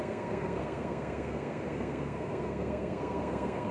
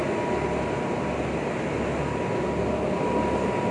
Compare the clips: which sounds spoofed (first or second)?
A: first